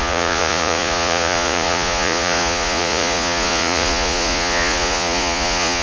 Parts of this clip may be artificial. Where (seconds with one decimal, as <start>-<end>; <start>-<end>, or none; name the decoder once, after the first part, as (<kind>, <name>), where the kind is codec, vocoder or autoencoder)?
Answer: 0.0-5.8 (vocoder, Vocos)